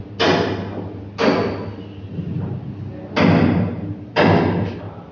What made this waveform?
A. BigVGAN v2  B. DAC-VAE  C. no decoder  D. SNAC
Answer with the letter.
C